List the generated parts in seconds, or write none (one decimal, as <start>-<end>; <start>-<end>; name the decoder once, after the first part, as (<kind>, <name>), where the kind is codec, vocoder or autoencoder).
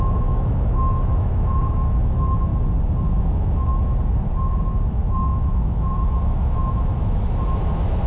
0.0-2.5 (autoencoder, DAC-VAE); 3.2-3.7; 4.9-8.1